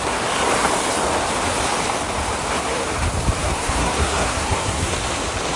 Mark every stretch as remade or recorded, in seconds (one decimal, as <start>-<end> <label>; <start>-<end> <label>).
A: 0.0-3.4 recorded; 3.4-4.9 remade; 4.9-5.6 recorded